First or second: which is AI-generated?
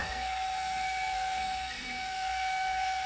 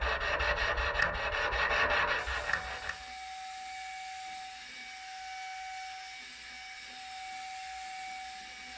first